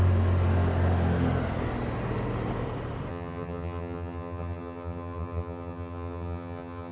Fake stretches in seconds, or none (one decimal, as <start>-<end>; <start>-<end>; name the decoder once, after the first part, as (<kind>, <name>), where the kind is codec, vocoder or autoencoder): 3.1-6.9 (vocoder, HiFi-GAN)